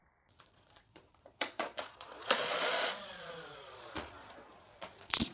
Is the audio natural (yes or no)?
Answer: no